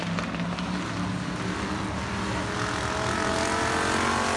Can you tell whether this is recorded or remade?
recorded